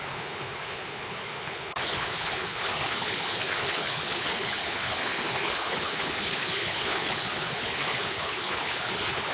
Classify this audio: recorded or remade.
remade